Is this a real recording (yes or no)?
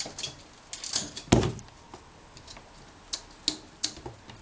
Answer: yes